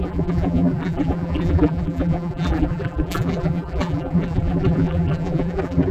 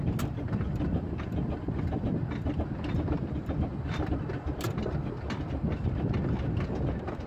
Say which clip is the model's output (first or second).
first